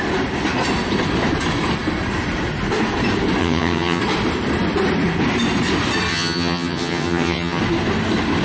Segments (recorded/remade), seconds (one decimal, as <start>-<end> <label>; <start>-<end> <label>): 0.0-3.4 recorded; 3.4-4.0 remade; 4.0-6.1 recorded; 6.1-7.6 remade; 7.6-8.4 recorded